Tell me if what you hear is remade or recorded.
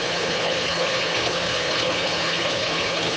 remade